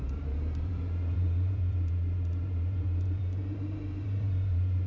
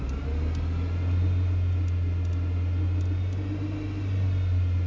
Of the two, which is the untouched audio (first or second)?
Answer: second